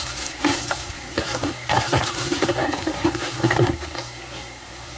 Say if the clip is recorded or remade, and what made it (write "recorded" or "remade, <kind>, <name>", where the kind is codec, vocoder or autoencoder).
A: remade, codec, SNAC